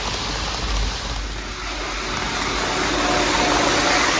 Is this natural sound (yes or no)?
yes